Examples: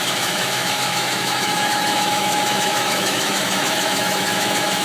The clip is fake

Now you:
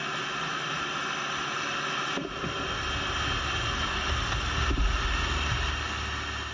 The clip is real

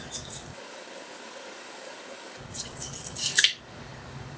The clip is fake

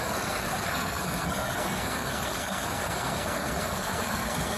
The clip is fake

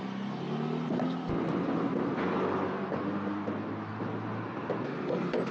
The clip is real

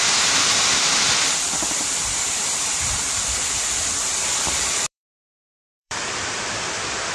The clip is fake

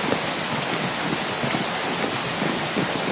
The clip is real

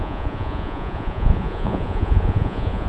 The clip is fake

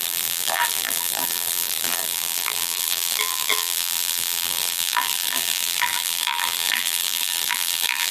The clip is fake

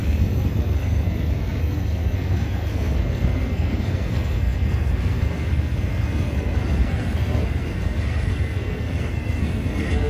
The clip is fake